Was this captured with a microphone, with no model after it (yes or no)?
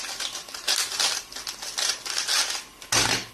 yes